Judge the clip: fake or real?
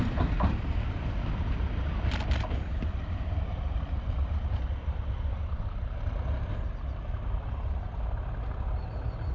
real